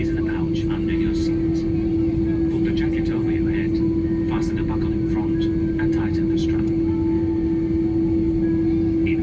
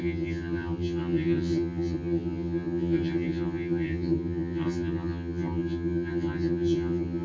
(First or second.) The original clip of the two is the first